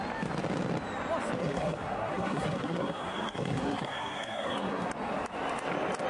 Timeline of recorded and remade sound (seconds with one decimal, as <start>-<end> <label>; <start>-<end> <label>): 0.0-1.4 recorded; 1.4-4.9 remade; 4.9-6.1 recorded